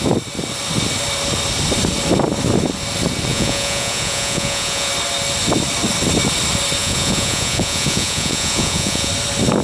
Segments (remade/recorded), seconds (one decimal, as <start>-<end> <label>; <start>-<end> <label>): 0.0-3.3 recorded; 3.3-4.9 remade; 4.9-6.8 recorded; 6.8-9.1 remade; 9.1-9.6 recorded